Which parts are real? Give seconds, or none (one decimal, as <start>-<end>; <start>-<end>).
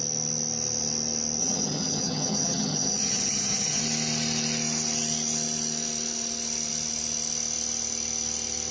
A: 0.0-1.4; 3.8-8.7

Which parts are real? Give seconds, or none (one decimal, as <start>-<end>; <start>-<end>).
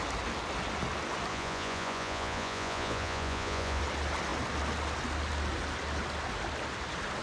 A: 0.0-1.3; 3.8-7.2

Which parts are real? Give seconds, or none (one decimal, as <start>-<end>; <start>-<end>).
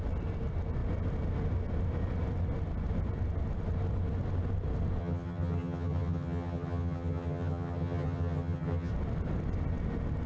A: 0.0-5.0; 8.9-10.3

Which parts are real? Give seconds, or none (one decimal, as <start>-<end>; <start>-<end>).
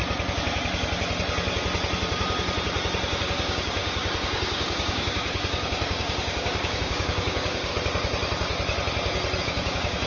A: 0.0-3.2; 7.7-9.4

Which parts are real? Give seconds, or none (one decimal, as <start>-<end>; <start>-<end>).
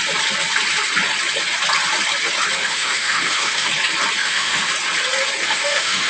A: 0.0-2.6; 3.7-4.2; 4.7-5.4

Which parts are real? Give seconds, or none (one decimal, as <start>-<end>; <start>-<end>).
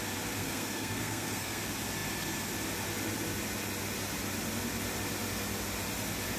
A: 0.0-0.4; 1.6-6.4